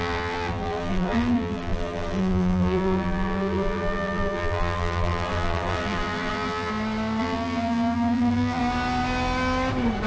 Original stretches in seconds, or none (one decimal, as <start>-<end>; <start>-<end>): 6.7-7.2; 8.6-10.1